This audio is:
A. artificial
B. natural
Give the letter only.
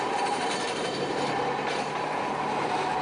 A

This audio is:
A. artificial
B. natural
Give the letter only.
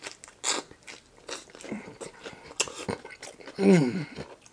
B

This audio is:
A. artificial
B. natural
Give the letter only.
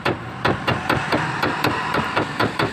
A